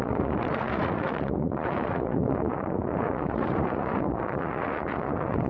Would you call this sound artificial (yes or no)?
yes